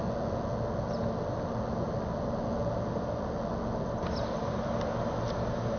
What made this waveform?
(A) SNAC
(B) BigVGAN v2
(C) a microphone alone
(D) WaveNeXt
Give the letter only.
C